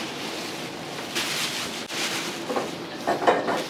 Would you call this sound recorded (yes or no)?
yes